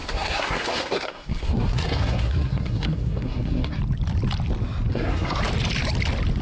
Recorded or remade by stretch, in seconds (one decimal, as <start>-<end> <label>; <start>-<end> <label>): 0.0-3.8 remade; 3.8-4.9 recorded; 4.9-5.4 remade; 5.4-6.4 recorded